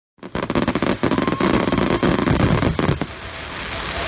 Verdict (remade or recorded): recorded